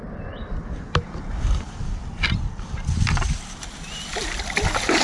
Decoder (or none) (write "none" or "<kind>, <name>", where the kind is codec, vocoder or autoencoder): none